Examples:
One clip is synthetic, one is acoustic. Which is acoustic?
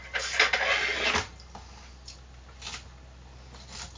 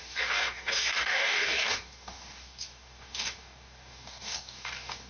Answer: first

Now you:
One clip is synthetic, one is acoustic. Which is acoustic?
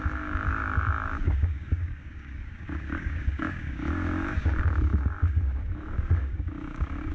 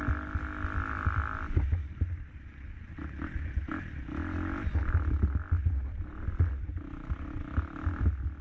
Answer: second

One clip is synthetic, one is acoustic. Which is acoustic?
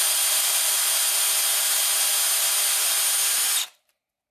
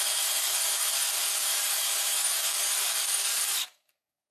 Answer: first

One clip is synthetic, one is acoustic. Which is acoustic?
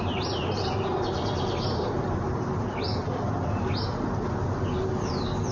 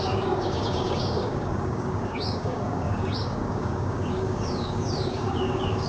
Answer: first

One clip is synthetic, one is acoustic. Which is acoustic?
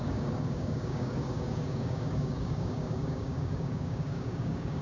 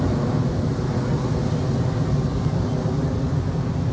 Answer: second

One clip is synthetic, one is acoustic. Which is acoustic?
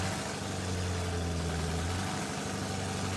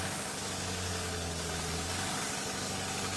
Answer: first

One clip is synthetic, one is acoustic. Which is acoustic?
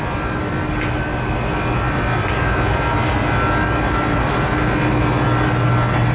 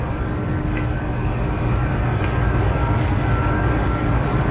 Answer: first